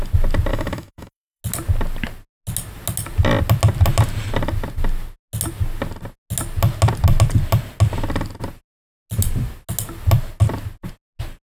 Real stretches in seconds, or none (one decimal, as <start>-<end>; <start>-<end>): 0.0-0.5; 1.4-11.5